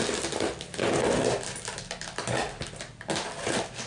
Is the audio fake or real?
real